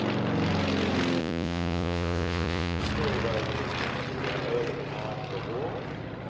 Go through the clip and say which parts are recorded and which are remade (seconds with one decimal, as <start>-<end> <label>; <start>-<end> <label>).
0.0-1.2 recorded; 1.2-2.8 remade; 2.8-6.3 recorded

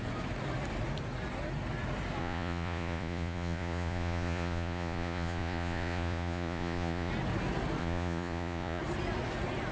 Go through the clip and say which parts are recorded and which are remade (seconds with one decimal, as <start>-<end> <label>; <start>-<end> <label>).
0.0-2.2 recorded; 2.2-7.1 remade; 7.1-7.8 recorded; 7.8-8.8 remade; 8.8-9.7 recorded

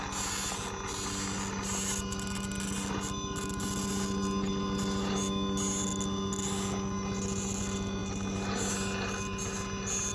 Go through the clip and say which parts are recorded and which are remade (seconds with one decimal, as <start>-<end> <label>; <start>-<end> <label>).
0.0-10.1 recorded

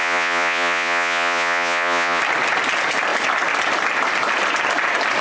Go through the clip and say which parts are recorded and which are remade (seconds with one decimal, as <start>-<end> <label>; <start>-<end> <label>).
0.0-2.2 remade; 2.2-5.2 recorded

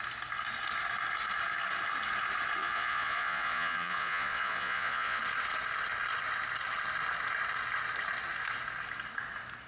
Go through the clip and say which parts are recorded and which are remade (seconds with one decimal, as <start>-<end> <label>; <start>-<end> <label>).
0.0-2.6 recorded; 2.6-5.2 remade; 5.2-9.7 recorded